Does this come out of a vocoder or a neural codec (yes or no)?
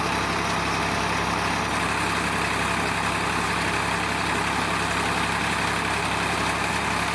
no